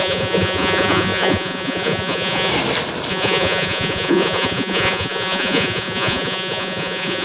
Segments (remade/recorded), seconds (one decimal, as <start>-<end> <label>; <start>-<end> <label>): 0.0-2.5 remade; 2.5-3.1 recorded; 3.1-7.2 remade